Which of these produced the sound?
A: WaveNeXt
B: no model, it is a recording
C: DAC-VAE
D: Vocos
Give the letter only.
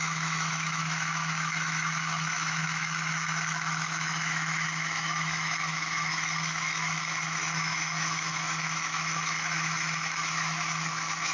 C